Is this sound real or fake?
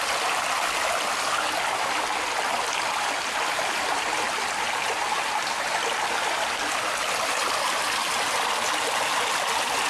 real